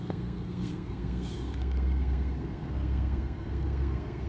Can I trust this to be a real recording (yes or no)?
no